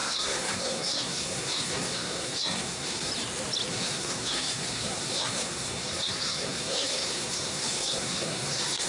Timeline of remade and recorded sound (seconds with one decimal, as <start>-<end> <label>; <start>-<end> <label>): 0.0-3.1 remade; 3.1-3.7 recorded; 3.7-8.9 remade